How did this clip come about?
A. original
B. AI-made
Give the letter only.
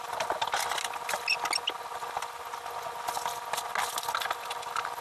A